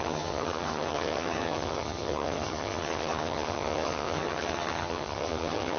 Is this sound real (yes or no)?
no